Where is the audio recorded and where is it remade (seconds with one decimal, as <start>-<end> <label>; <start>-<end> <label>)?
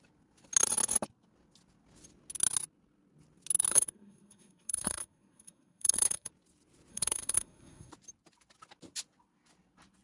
0.0-3.7 recorded; 3.7-6.3 remade; 6.3-6.9 recorded; 6.9-7.9 remade; 7.9-10.0 recorded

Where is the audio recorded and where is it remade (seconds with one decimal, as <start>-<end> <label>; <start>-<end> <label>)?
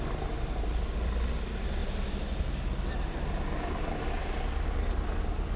0.0-5.6 recorded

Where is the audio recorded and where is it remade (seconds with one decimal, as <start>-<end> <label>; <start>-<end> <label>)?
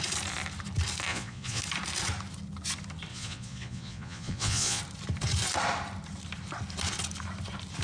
0.0-1.1 recorded; 1.1-1.6 remade; 1.6-3.1 recorded; 3.1-4.8 remade; 4.8-7.8 recorded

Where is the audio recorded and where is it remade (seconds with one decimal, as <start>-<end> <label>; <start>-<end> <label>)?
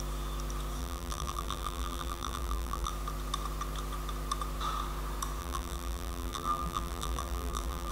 0.0-0.8 recorded; 0.8-2.9 remade; 2.9-5.4 recorded; 5.4-7.9 remade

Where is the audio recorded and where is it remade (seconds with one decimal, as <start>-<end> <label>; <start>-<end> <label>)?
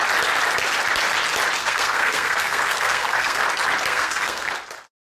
0.0-1.6 recorded; 1.6-3.4 remade; 3.4-3.9 recorded; 3.9-4.5 remade; 4.5-5.0 recorded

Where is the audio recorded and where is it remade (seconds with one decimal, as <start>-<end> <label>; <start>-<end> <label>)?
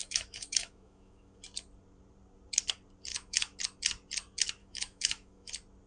0.0-1.4 remade; 1.4-3.1 recorded; 3.1-3.6 remade; 3.6-4.6 recorded; 4.6-5.5 remade; 5.5-5.9 recorded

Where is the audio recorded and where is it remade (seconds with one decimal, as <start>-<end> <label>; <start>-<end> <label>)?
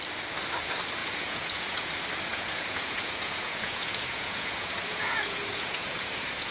0.0-1.0 recorded; 1.0-1.9 remade; 1.9-2.3 recorded; 2.3-6.5 remade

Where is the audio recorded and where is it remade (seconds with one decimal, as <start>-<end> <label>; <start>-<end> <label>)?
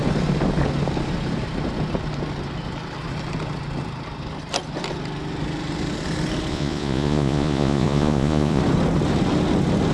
0.0-6.5 recorded; 6.5-8.6 remade; 8.6-9.9 recorded